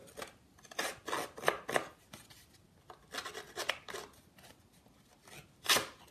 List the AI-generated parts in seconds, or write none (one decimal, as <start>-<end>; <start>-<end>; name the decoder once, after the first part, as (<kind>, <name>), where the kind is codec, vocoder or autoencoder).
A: none